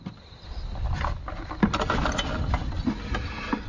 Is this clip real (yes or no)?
yes